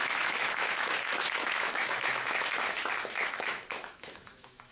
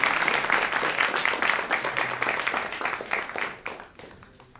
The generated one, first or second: first